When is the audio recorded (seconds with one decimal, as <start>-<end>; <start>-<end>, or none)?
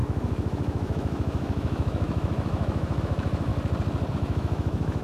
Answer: 3.5-4.1